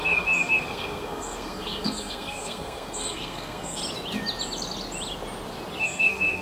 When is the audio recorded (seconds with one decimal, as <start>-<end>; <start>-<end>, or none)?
3.8-5.8